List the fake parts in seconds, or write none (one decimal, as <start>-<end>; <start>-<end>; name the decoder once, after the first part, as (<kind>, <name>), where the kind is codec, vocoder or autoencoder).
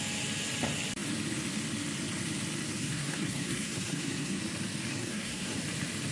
2.8-4.4 (codec, SNAC); 4.9-5.6